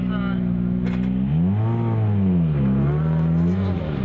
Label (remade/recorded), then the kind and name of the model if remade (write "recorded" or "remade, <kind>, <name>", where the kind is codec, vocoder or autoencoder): recorded